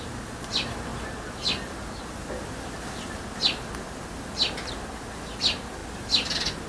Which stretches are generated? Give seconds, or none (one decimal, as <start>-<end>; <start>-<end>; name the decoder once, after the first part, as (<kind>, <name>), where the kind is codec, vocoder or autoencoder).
none